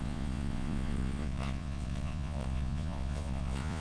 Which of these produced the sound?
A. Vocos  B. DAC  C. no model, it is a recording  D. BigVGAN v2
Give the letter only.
A